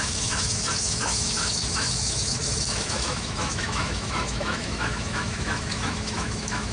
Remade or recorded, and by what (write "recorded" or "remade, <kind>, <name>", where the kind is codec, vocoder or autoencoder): remade, autoencoder, DAC-VAE